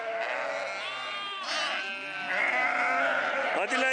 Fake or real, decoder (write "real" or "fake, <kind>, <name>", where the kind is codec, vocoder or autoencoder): real